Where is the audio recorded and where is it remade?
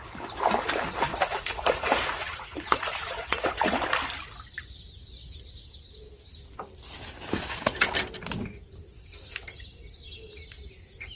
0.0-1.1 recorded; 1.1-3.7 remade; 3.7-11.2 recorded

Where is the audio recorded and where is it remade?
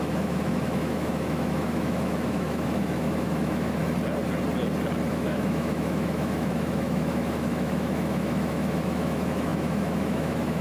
0.0-3.8 remade; 3.8-5.1 recorded; 5.1-10.6 remade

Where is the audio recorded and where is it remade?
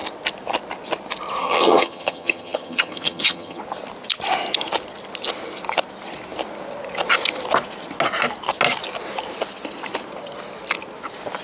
0.0-1.4 recorded; 1.4-3.6 remade; 3.6-11.4 recorded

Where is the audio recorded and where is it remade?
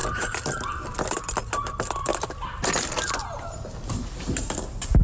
0.0-1.3 remade; 1.3-2.0 recorded; 2.0-3.1 remade; 3.1-5.0 recorded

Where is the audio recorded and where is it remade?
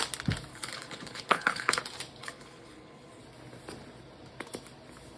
0.0-0.5 recorded; 0.5-1.8 remade; 1.8-2.2 recorded; 2.2-3.2 remade; 3.2-5.2 recorded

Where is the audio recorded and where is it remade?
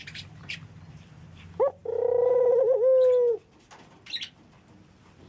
0.0-5.3 recorded